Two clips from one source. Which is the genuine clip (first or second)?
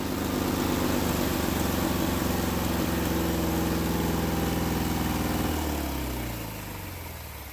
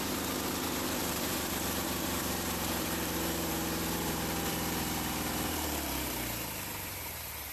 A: first